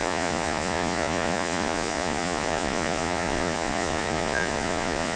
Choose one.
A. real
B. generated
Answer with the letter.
B